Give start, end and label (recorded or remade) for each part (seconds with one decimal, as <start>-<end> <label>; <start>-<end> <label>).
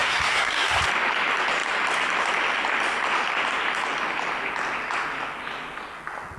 0.0-0.8 remade; 0.8-6.4 recorded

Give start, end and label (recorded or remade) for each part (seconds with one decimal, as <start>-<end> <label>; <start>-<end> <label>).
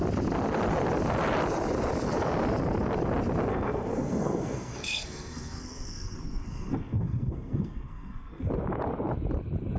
0.0-3.5 recorded; 3.5-8.5 remade; 8.5-9.8 recorded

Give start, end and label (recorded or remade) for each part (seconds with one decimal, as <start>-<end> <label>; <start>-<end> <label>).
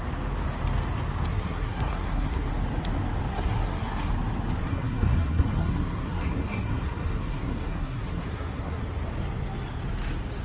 0.0-1.3 recorded; 1.3-2.5 remade; 2.5-3.3 recorded; 3.3-4.1 remade; 4.1-4.6 recorded; 4.6-8.8 remade; 8.8-10.4 recorded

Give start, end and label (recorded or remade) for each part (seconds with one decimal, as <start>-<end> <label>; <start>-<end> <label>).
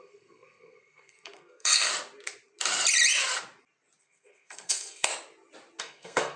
0.0-1.9 remade; 1.9-4.0 recorded; 4.0-5.1 remade; 5.1-5.8 recorded; 5.8-6.4 remade